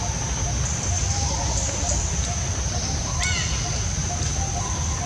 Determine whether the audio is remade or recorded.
recorded